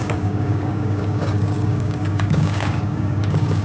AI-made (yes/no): yes